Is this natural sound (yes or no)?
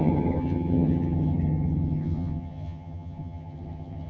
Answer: no